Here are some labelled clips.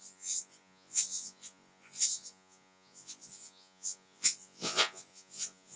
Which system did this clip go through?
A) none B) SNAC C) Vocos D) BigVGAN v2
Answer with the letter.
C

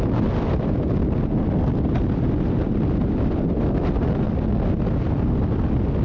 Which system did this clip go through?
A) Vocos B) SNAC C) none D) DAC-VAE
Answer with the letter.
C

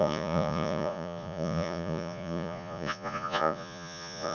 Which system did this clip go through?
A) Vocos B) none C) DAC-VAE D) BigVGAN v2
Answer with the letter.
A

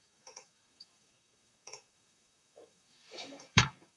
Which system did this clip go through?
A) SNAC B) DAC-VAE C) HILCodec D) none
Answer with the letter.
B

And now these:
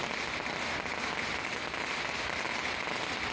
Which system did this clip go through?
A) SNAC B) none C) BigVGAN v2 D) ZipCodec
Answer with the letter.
B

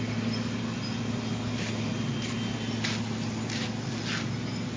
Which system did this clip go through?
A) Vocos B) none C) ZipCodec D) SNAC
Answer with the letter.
B